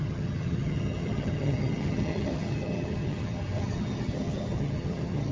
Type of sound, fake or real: fake